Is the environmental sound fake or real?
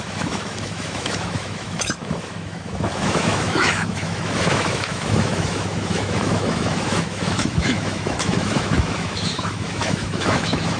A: fake